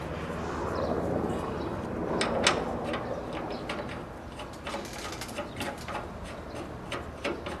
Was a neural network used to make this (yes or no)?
no